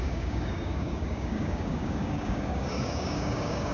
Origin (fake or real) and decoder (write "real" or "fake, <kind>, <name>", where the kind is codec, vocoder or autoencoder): fake, codec, DAC